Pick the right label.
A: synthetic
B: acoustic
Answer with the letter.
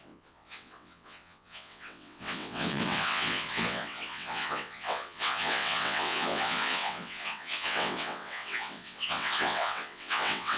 A